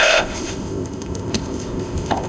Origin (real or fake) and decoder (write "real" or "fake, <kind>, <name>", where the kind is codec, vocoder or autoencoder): fake, codec, ZipCodec